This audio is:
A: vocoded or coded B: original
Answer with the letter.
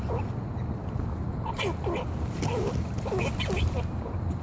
B